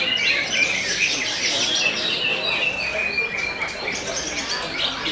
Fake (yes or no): no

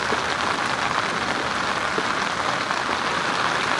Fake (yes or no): no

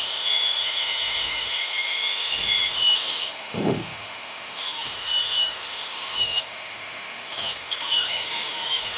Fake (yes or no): yes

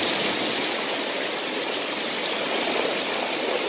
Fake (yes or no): no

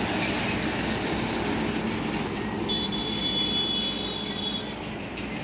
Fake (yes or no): no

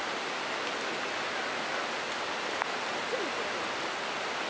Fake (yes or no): no